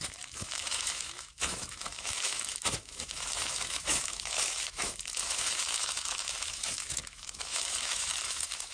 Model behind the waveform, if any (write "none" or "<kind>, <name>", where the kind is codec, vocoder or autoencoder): autoencoder, DAC-VAE